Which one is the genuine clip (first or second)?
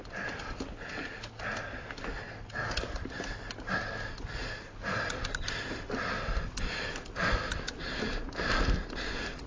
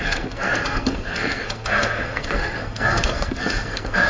first